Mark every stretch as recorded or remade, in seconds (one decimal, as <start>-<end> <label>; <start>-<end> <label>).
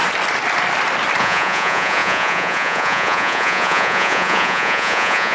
0.0-1.2 recorded; 1.2-5.3 remade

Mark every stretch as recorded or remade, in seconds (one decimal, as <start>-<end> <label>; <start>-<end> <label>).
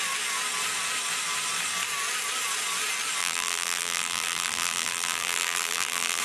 0.0-3.2 recorded; 3.2-6.2 remade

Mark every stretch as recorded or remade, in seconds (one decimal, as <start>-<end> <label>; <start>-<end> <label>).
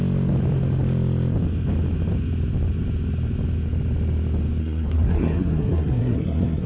0.0-4.6 recorded; 4.6-6.7 remade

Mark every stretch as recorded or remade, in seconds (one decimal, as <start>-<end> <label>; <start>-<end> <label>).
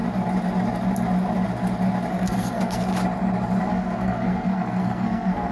0.0-2.1 recorded; 2.1-2.9 remade; 2.9-3.6 recorded; 3.6-5.5 remade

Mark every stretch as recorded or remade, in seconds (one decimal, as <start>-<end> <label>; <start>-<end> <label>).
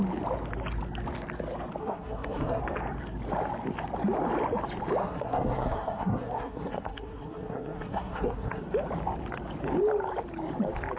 0.0-1.8 recorded; 1.8-2.6 remade; 2.6-5.0 recorded; 5.0-8.6 remade; 8.6-11.0 recorded